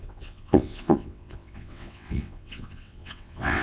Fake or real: fake